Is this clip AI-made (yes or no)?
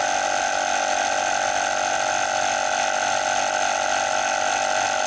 no